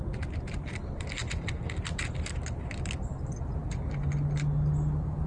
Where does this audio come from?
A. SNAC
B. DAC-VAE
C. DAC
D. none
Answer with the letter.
D